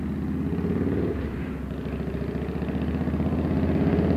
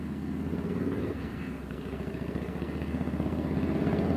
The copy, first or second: second